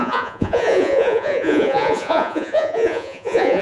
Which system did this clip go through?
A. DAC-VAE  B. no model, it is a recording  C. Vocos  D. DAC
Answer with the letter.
C